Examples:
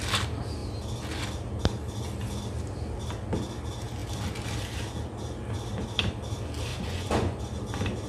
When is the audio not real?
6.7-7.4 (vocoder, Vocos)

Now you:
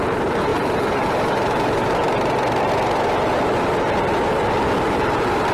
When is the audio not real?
none